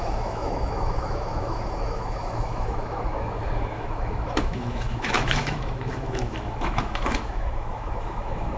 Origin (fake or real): fake